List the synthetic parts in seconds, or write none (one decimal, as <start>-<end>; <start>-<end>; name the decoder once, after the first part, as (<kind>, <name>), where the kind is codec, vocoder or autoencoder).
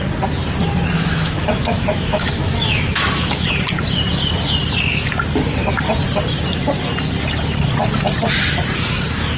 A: 1.0-3.5 (autoencoder, DAC-VAE)